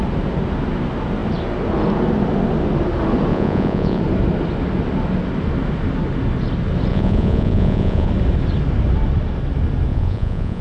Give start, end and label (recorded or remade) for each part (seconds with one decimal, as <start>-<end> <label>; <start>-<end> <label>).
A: 0.0-3.3 recorded; 3.3-4.0 remade; 4.0-6.9 recorded; 6.9-8.1 remade; 8.1-9.9 recorded; 9.9-10.6 remade